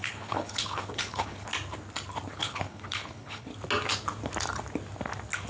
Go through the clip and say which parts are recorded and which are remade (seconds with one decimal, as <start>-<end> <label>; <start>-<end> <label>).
0.0-1.5 remade; 1.5-2.3 recorded; 2.3-3.5 remade; 3.5-5.5 recorded